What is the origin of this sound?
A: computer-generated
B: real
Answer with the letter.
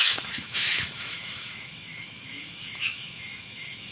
A